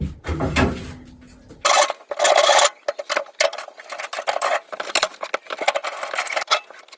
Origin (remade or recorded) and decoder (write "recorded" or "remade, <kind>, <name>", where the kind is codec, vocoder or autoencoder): recorded